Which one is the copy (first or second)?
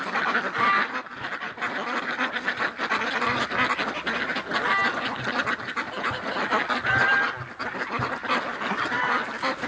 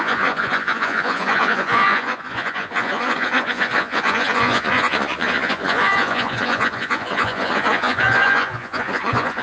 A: second